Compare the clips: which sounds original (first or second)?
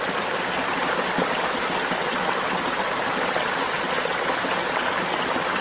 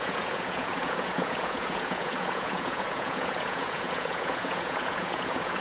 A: first